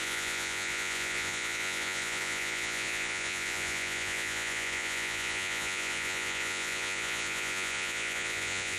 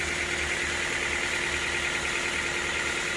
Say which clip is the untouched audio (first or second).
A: second